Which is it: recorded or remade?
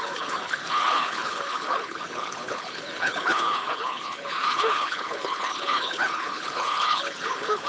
remade